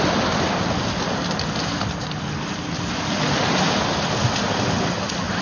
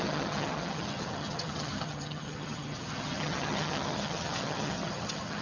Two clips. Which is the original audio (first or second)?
first